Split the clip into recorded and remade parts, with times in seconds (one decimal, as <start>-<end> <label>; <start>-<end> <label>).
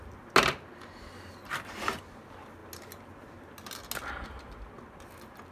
0.0-5.5 recorded